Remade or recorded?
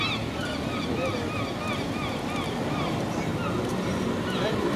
recorded